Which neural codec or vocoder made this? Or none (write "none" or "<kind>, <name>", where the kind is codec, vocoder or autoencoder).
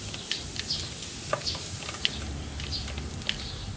none